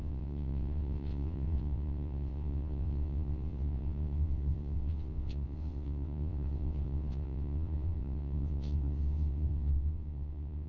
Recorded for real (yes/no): no